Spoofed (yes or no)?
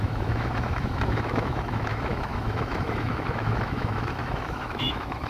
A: yes